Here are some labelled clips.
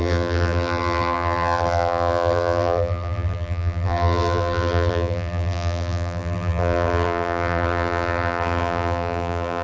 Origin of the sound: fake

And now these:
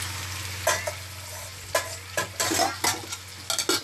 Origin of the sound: real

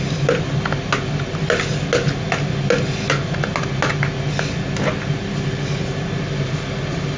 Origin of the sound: real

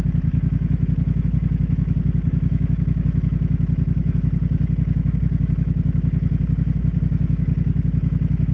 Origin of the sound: fake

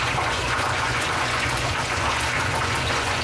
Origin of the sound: fake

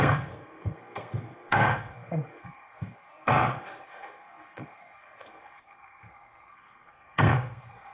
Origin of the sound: fake